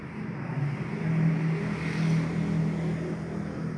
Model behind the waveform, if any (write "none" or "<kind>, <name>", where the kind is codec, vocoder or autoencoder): none